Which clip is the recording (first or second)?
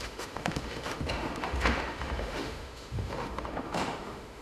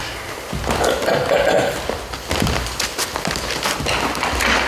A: second